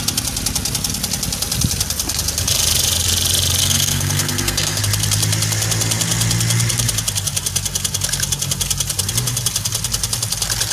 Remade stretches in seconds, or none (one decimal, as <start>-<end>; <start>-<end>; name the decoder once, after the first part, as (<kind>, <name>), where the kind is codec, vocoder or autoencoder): 3.6-4.8 (codec, SNAC)